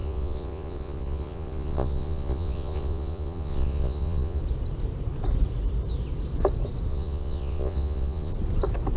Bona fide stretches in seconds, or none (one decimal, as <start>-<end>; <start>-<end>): 4.4-6.9; 8.3-9.0